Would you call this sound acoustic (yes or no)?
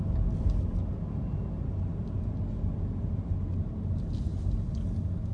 yes